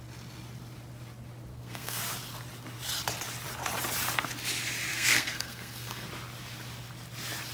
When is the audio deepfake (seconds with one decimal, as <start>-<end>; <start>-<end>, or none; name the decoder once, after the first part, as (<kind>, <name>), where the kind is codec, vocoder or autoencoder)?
1.5-2.0 (codec, SNAC); 4.9-6.1